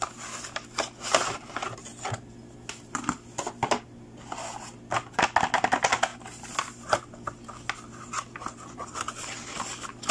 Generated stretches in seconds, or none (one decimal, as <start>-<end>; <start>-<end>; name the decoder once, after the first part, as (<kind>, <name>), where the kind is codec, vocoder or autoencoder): none